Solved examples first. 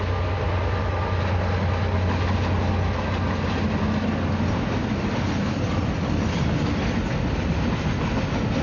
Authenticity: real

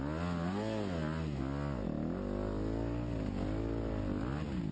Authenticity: real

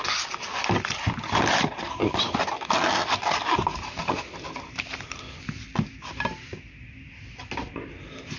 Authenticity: real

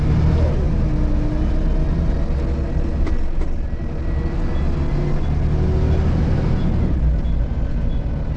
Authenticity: real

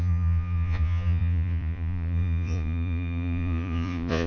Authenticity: fake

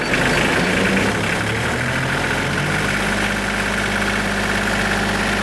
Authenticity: real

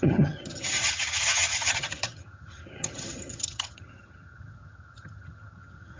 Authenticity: fake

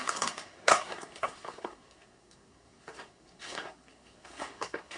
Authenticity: fake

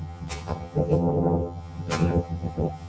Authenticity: fake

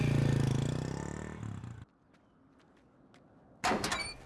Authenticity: real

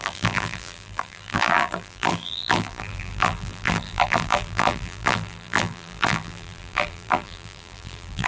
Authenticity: fake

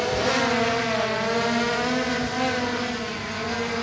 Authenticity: real